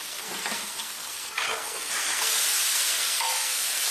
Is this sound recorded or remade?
remade